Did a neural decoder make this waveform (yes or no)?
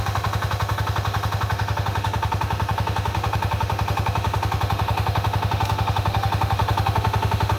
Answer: yes